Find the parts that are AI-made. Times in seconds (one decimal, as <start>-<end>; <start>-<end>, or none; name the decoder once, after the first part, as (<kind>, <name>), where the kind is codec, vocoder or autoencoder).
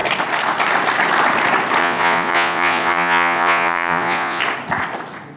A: 1.8-4.4 (vocoder, Vocos)